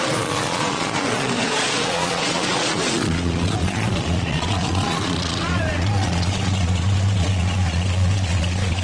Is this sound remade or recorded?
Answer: remade